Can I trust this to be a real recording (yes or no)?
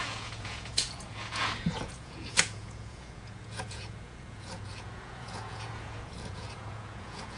no